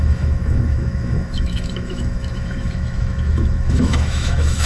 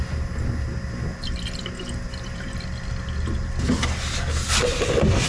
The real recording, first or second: second